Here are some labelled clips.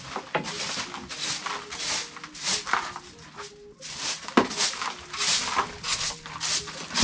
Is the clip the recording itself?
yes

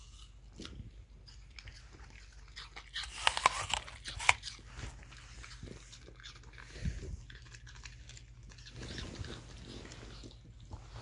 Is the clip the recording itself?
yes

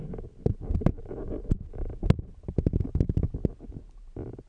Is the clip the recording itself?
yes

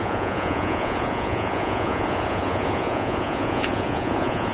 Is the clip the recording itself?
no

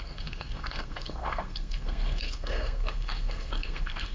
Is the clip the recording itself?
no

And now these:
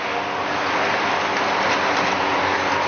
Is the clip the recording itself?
yes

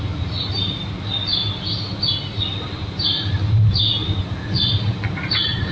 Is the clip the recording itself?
yes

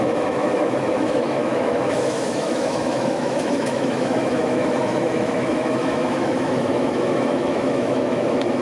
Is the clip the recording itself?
no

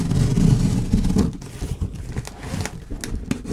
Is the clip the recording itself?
yes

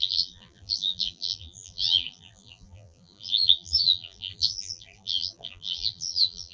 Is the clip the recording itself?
no